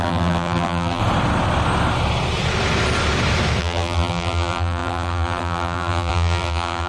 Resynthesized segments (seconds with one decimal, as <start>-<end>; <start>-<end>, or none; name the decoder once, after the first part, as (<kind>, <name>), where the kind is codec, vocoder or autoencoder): 0.0-1.0 (vocoder, BigVGAN v2); 3.6-6.9